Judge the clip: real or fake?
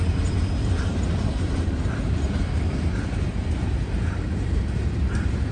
fake